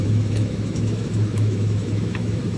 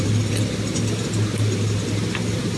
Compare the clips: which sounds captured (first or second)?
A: second